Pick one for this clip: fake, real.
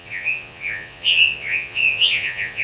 fake